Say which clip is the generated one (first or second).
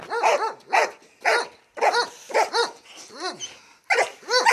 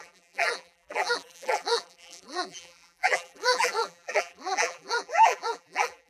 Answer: second